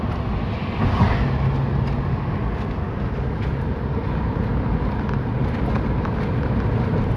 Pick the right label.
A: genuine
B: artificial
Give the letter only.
A